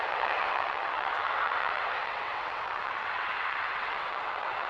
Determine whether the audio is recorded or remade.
remade